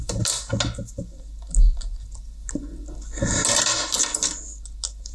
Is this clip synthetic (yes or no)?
no